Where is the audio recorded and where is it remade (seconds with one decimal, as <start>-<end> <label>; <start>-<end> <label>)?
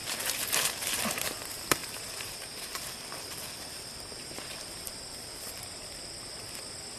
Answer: 0.0-1.8 recorded; 1.8-6.0 remade; 6.0-7.0 recorded